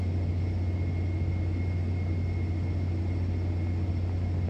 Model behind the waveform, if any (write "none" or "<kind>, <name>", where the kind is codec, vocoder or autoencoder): none